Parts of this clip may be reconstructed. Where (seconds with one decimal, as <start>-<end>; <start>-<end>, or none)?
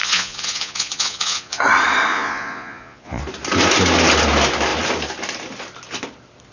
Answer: 0.0-1.6; 2.1-3.2